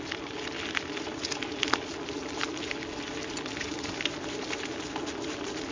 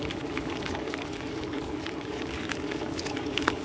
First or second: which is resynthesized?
second